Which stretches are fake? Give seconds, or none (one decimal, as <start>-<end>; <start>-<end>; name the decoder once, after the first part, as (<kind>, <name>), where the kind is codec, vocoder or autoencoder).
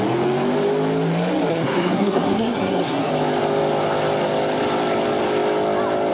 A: 1.5-3.1 (codec, SNAC)